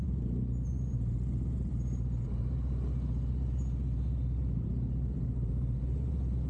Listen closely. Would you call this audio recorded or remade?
remade